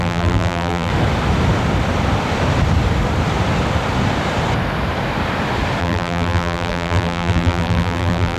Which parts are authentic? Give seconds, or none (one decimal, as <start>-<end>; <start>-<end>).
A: 0.9-5.8